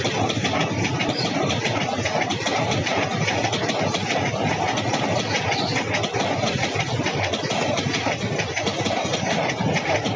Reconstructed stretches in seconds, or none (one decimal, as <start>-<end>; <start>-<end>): none